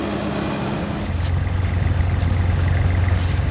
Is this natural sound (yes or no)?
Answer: yes